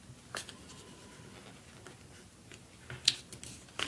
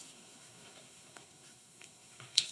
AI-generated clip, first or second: second